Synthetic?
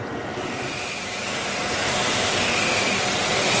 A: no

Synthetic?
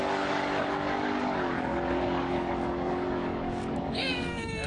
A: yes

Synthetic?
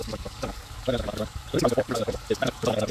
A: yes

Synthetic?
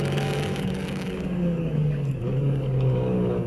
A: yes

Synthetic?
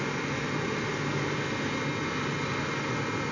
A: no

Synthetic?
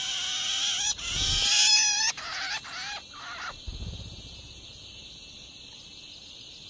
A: no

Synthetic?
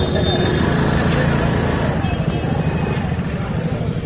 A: no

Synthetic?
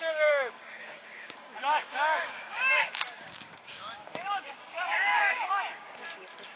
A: yes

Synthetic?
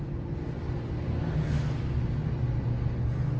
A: no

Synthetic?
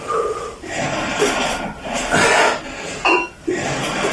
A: no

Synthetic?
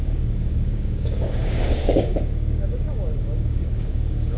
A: yes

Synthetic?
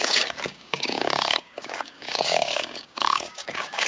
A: yes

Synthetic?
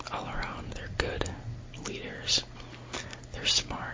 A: no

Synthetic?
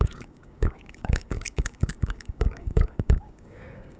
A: yes